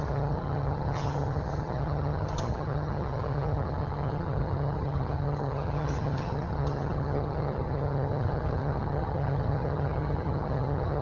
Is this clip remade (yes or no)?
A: yes